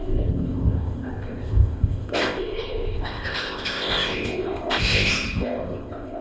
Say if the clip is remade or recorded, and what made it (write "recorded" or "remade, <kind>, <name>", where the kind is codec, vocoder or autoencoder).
remade, codec, ZipCodec